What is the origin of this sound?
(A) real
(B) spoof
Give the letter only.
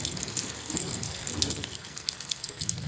B